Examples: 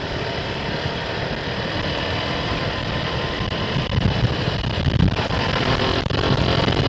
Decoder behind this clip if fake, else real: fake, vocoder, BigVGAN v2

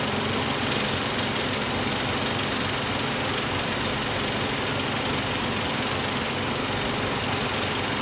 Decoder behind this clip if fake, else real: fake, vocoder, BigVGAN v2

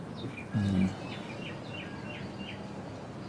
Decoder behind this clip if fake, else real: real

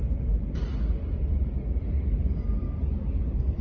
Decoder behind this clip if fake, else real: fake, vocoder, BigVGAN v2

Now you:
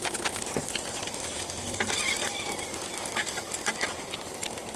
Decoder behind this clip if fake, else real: real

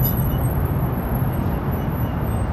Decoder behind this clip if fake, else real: real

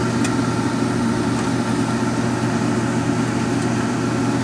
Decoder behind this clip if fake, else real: real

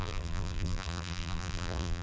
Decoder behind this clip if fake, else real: fake, vocoder, BigVGAN v2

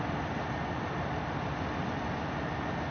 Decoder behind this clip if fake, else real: real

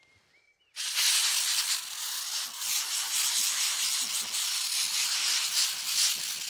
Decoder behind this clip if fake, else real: real